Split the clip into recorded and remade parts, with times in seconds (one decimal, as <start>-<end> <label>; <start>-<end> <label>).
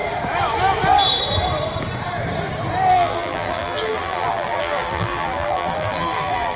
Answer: 0.0-2.9 recorded; 2.9-6.6 remade